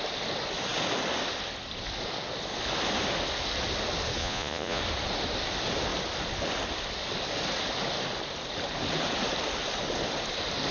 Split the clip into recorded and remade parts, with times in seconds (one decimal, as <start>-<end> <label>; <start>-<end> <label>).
0.0-4.2 recorded; 4.2-4.8 remade; 4.8-10.7 recorded